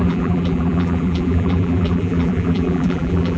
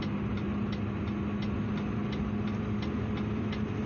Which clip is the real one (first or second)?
second